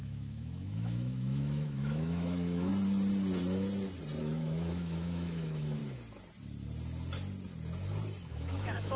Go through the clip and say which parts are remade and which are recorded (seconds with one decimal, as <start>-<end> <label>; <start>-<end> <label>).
0.0-2.7 remade; 2.7-4.2 recorded; 4.2-5.8 remade; 5.8-8.3 recorded; 8.3-9.0 remade